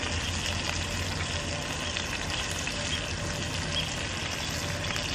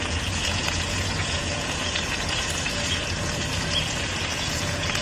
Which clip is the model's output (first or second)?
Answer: second